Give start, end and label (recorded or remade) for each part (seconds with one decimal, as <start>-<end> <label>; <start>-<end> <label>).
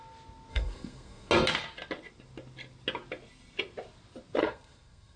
0.0-0.5 recorded; 0.5-1.3 remade; 1.3-4.4 recorded; 4.4-5.2 remade